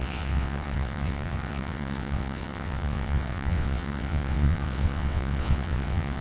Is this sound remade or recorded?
remade